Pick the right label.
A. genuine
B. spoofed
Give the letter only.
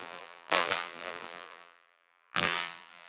B